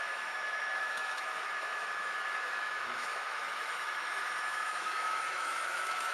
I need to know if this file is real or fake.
fake